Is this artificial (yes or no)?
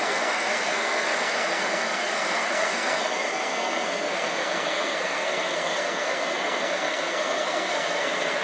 yes